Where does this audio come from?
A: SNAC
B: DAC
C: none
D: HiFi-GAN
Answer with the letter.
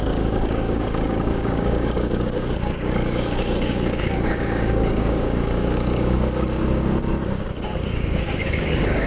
B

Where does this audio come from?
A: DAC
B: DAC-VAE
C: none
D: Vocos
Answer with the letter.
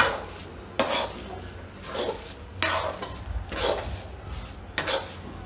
C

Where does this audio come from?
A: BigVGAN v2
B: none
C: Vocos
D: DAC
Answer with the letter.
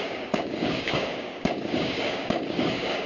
D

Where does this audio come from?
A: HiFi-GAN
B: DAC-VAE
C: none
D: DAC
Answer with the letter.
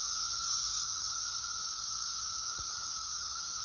D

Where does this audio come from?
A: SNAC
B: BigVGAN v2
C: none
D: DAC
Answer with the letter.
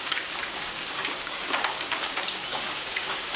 D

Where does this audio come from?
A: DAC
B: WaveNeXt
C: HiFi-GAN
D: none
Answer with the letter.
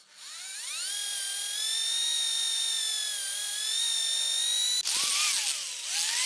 D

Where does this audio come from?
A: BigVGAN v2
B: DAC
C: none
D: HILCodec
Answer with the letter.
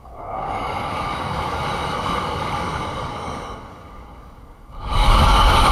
B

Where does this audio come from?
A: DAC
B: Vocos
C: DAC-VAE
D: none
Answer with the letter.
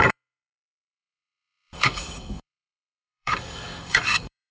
A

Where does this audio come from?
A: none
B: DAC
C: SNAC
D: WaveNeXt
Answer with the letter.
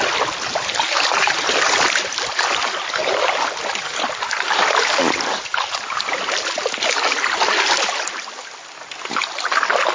A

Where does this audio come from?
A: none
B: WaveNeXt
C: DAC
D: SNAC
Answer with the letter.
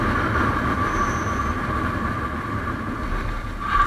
A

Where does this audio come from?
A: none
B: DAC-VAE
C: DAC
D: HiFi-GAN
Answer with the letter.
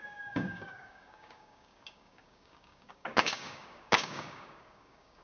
C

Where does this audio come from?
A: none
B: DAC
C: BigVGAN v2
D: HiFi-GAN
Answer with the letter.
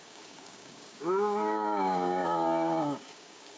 B